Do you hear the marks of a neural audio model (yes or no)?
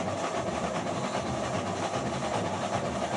no